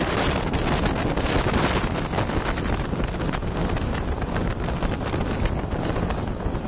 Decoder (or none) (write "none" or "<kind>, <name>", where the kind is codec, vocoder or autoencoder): none